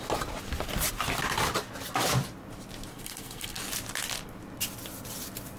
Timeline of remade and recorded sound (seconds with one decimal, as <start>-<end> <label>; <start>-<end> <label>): 0.0-2.9 recorded; 2.9-3.6 remade; 3.6-5.6 recorded